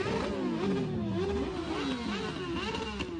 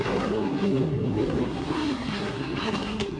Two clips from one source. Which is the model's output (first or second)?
second